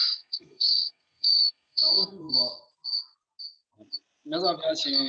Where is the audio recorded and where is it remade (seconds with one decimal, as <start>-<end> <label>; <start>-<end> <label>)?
0.0-2.3 remade; 2.3-5.1 recorded